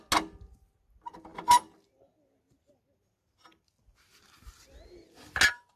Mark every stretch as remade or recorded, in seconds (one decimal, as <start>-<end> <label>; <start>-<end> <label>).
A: 0.0-5.8 recorded